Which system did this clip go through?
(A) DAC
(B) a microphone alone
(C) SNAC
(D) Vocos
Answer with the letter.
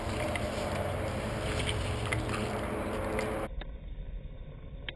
B